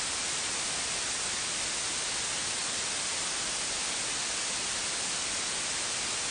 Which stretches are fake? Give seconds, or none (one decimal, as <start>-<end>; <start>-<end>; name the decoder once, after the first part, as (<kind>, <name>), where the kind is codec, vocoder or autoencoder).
none